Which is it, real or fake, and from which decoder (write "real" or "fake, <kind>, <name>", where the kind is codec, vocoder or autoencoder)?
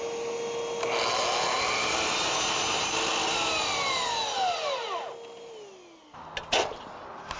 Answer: real